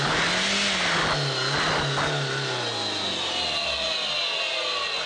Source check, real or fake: real